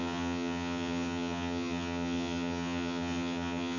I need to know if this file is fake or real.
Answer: fake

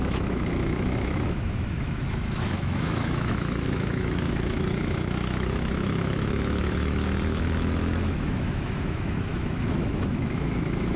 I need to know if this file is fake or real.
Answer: fake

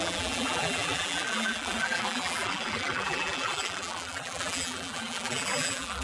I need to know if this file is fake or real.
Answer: fake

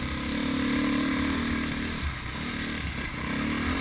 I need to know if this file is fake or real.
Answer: real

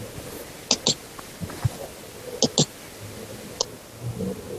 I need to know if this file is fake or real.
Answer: real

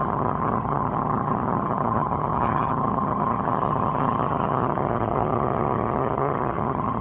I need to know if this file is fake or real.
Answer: fake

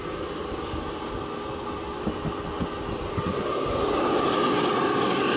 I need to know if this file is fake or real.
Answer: real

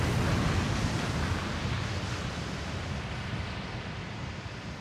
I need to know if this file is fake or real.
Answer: real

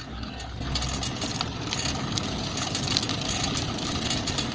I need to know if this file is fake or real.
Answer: real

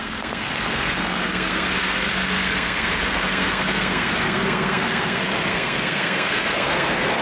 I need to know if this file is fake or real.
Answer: fake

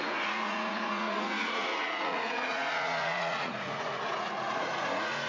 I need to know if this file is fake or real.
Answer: fake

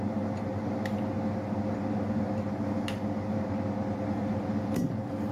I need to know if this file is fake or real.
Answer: real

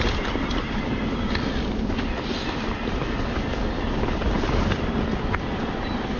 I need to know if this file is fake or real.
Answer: real